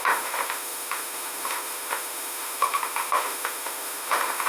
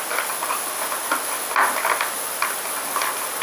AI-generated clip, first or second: first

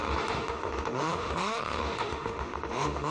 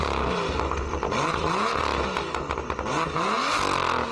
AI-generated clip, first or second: first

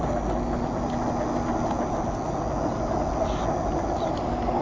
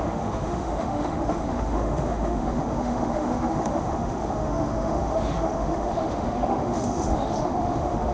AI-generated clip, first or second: second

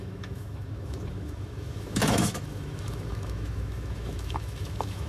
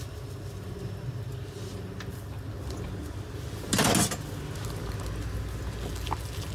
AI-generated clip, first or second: first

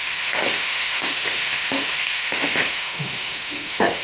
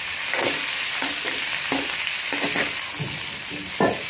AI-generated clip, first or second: first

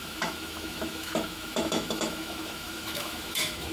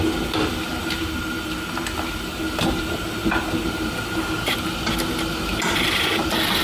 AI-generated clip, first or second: first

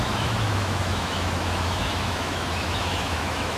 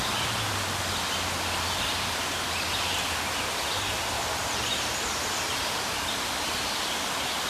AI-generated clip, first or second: first